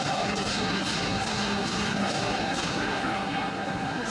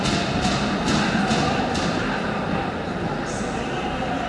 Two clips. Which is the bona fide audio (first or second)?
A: second